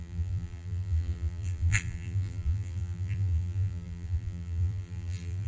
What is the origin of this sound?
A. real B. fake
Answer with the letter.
B